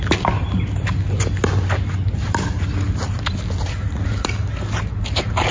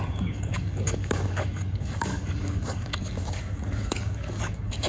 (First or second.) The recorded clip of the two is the first